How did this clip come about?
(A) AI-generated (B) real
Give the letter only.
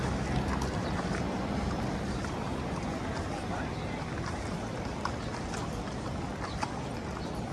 B